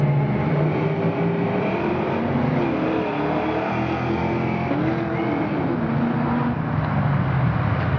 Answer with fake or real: real